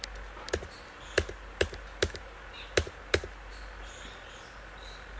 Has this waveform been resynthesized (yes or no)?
no